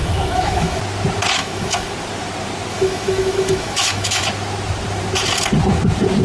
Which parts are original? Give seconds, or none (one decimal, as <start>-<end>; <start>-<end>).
0.8-1.4; 1.9-2.7; 4.2-6.2